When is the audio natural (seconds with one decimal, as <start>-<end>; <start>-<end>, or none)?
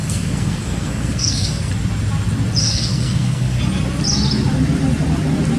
1.7-2.6; 3.6-5.6